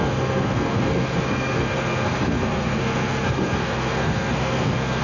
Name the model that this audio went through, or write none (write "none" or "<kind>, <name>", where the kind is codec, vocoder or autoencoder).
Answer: codec, SNAC